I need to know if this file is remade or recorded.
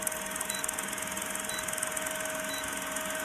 recorded